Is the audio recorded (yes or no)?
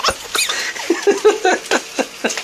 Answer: yes